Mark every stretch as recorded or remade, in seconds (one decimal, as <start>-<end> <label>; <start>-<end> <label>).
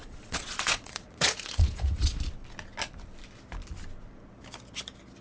0.0-2.2 remade; 2.2-5.2 recorded